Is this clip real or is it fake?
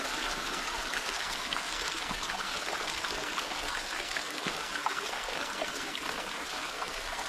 fake